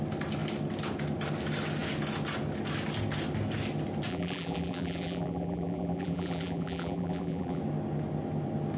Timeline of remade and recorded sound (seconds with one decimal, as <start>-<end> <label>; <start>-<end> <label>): 0.0-4.1 recorded; 4.1-7.6 remade; 7.6-8.8 recorded